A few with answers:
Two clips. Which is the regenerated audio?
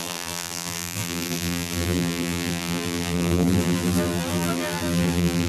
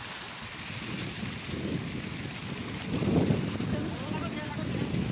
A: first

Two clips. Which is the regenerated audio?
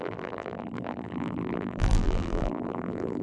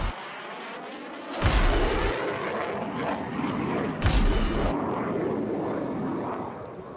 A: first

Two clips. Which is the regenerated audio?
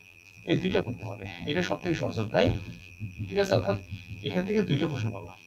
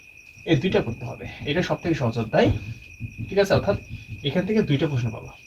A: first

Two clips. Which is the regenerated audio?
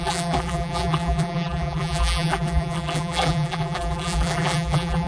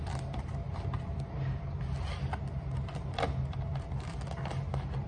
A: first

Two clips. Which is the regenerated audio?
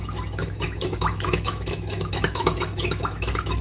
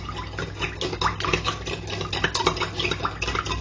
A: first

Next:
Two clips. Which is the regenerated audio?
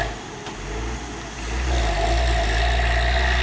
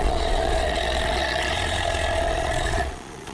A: second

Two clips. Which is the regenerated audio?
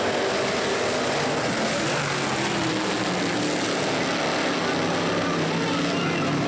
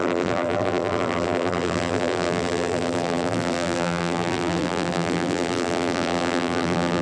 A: second